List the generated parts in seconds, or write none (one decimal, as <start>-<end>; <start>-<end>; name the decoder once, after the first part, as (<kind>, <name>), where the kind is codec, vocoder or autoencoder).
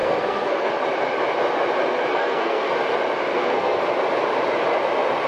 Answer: 0.0-0.7 (codec, SNAC); 2.1-2.7; 3.3-3.8